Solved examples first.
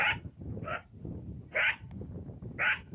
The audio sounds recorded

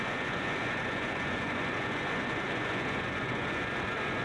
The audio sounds remade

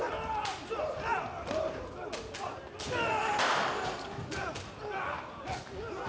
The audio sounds recorded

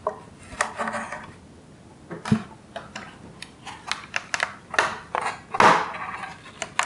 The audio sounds recorded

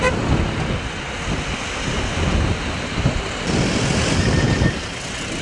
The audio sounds recorded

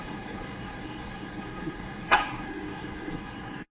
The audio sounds remade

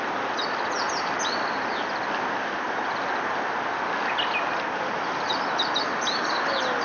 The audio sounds recorded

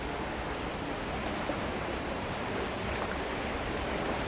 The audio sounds recorded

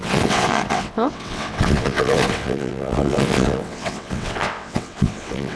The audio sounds remade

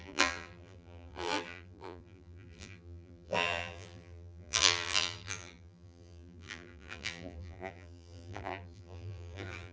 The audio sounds remade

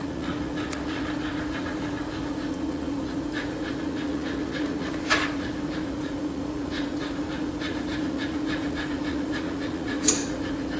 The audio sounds remade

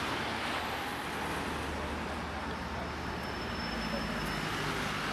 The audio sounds recorded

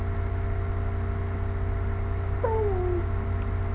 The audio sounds recorded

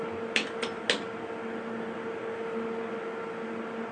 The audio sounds recorded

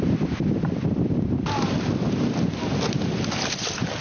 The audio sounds recorded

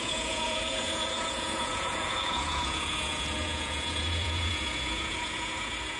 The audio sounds remade